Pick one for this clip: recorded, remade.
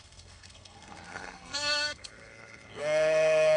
remade